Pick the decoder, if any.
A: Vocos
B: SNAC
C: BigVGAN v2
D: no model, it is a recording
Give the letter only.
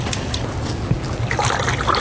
D